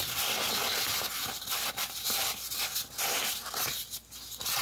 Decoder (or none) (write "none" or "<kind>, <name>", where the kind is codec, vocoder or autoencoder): none